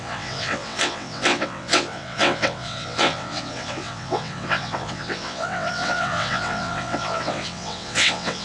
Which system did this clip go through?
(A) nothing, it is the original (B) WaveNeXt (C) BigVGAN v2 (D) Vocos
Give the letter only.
B